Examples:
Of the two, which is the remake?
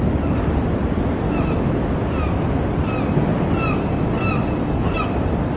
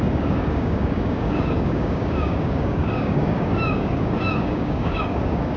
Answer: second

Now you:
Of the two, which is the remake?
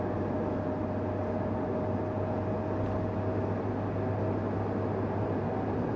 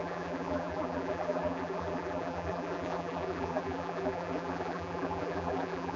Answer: second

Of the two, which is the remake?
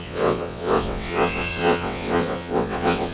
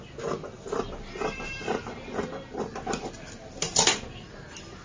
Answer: first